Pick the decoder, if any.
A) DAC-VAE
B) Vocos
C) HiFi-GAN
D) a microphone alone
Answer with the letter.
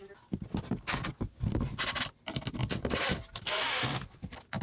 D